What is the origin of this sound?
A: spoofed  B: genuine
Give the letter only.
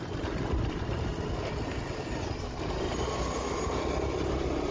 B